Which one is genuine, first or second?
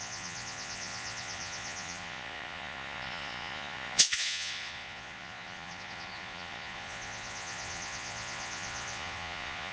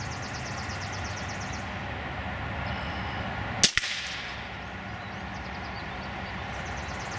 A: second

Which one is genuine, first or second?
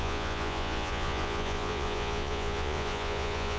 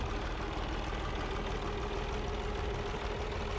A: second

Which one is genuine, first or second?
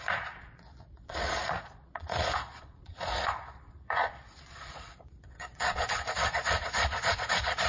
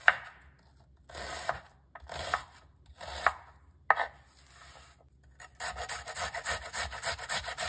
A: second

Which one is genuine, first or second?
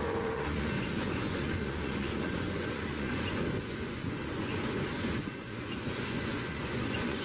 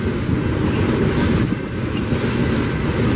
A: second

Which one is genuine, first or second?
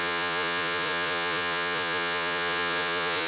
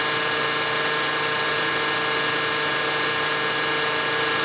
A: second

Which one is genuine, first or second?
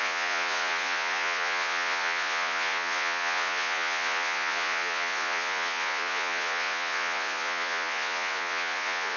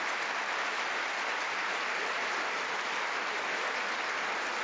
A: second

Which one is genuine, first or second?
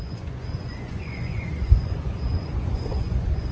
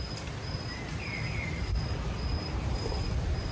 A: second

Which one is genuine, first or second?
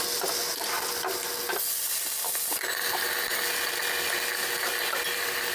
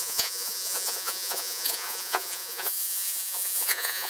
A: first